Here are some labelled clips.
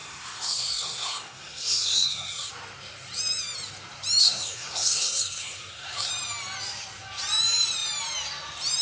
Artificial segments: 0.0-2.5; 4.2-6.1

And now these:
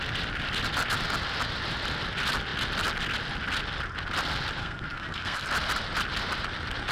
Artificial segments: 4.6-5.5

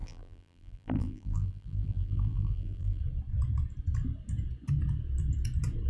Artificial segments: 0.0-3.0

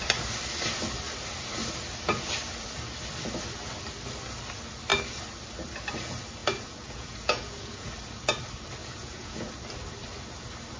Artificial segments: 6.4-7.9; 8.8-9.6

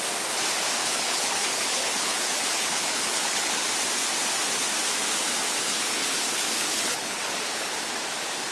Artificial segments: 0.8-3.7; 5.4-7.8

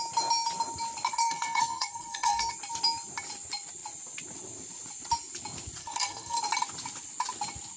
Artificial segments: 1.2-2.5; 5.8-6.4